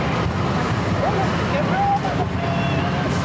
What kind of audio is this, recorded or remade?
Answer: recorded